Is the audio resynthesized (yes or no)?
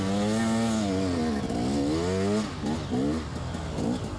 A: no